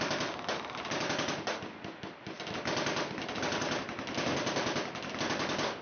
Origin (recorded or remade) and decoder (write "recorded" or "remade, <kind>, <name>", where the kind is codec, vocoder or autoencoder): recorded